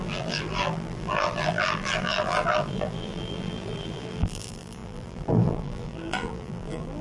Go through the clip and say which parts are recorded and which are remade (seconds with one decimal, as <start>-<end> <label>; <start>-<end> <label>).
0.0-7.0 remade